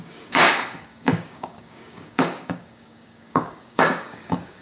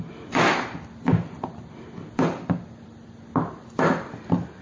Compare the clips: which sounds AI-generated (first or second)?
first